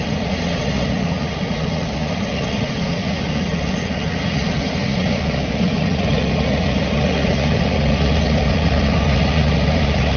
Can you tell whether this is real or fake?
fake